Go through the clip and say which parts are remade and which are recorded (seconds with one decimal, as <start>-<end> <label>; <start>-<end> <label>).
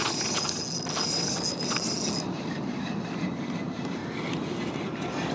0.0-2.3 recorded; 2.3-4.0 remade; 4.0-5.3 recorded